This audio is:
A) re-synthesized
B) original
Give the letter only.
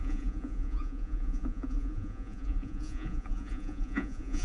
A